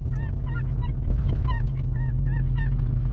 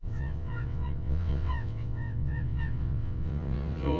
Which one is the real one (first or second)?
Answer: first